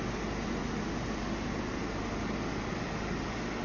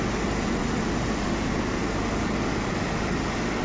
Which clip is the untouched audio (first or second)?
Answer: first